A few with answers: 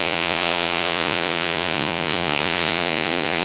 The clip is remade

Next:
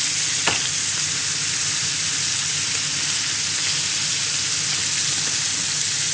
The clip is recorded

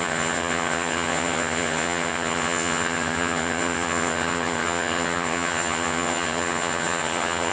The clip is remade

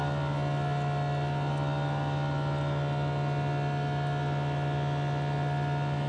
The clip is recorded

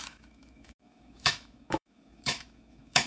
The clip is remade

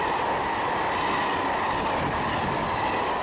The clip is recorded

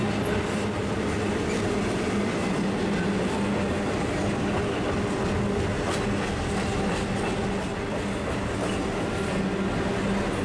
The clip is recorded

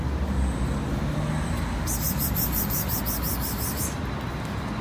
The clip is recorded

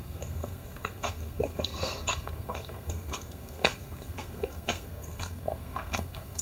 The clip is remade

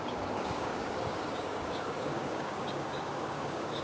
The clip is remade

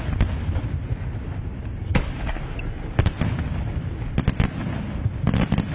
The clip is recorded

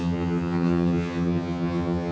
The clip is remade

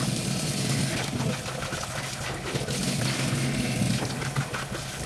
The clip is recorded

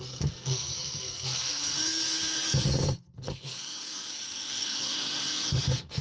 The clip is remade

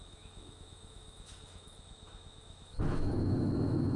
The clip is remade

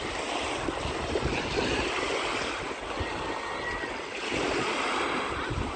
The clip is recorded